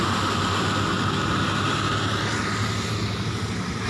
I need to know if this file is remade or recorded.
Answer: recorded